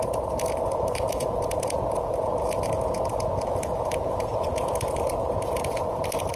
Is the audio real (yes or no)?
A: no